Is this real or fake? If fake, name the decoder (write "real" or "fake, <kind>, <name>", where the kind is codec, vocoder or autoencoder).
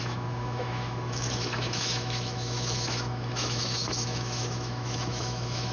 fake, autoencoder, DAC-VAE